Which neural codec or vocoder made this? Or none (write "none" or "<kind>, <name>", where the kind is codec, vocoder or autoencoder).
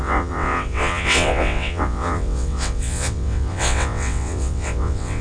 vocoder, WaveNeXt